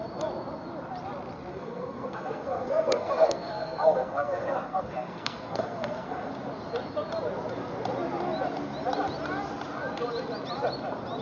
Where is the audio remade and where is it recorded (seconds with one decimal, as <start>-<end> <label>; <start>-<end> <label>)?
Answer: 0.0-1.5 recorded; 1.5-6.3 remade; 6.3-11.2 recorded